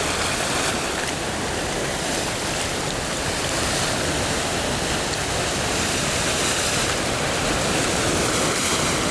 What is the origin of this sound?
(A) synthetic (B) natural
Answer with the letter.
B